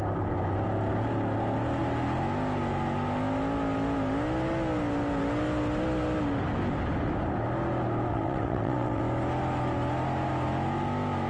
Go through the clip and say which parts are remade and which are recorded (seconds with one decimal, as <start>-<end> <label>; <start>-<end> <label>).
0.0-8.1 recorded; 8.1-9.0 remade; 9.0-11.3 recorded